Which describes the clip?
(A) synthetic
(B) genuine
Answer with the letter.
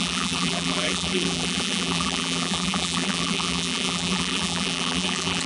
A